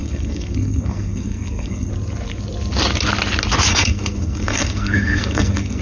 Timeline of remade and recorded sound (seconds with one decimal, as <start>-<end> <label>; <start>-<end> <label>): 0.0-1.9 remade; 1.9-3.7 recorded; 3.7-5.8 remade